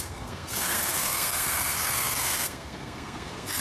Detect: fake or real fake